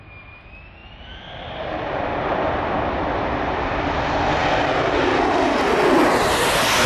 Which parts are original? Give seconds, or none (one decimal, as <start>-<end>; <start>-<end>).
0.0-6.9